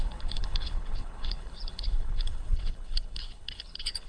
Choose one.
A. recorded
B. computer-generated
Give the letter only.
B